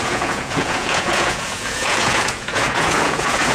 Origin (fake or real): fake